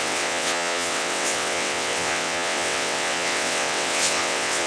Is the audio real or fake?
fake